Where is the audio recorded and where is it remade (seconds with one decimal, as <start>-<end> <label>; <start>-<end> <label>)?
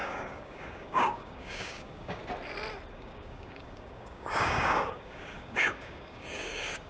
0.0-2.2 remade; 2.2-2.9 recorded; 2.9-6.9 remade